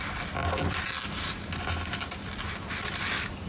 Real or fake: real